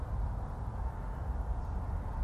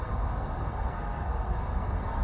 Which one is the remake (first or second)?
second